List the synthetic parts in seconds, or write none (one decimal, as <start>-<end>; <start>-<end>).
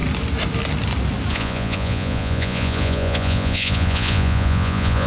1.3-5.1